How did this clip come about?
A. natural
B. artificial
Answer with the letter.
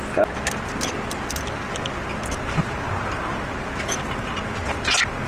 A